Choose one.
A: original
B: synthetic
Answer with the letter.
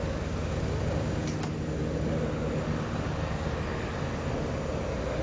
A